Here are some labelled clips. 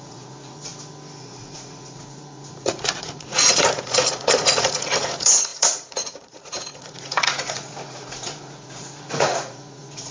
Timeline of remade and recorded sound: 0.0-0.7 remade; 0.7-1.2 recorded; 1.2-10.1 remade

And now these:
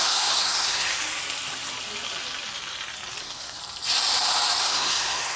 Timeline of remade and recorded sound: 0.0-0.9 remade; 0.9-3.2 recorded; 3.2-3.6 remade; 3.6-4.6 recorded; 4.6-5.4 remade

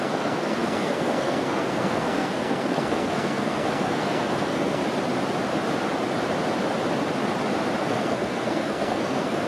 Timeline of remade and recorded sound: 0.0-4.8 remade; 4.8-7.8 recorded; 7.8-9.5 remade

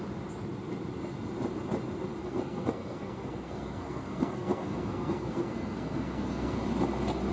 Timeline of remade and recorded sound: 0.0-2.2 recorded; 2.2-6.6 remade; 6.6-7.3 recorded

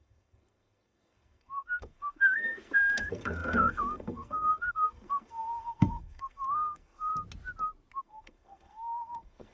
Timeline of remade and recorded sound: 0.0-7.1 remade; 7.1-8.0 recorded; 8.0-9.5 remade